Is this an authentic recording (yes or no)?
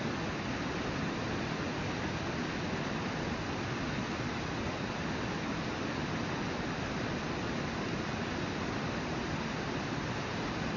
yes